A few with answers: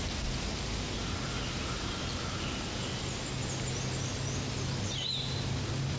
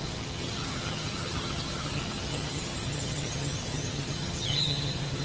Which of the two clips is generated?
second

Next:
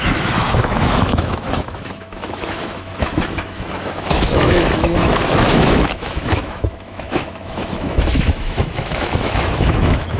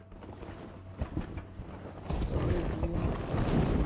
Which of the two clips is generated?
first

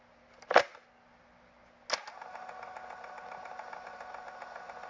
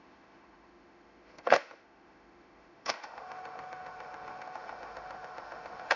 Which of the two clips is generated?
second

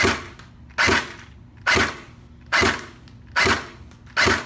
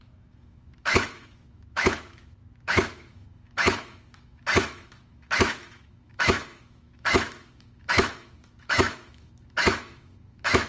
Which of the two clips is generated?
second